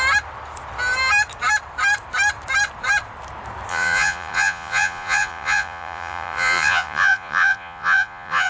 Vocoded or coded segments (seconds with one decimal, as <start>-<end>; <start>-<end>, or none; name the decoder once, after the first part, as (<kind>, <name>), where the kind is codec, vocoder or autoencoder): 3.7-8.5 (vocoder, Vocos)